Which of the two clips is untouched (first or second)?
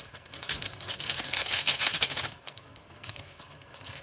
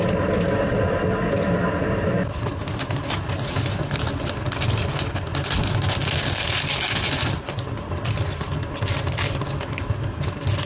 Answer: second